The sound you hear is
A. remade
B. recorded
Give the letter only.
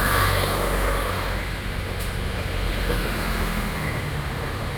A